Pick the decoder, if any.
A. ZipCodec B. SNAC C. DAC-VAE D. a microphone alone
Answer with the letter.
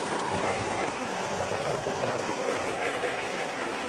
B